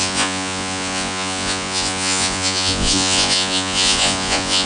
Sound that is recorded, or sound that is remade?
remade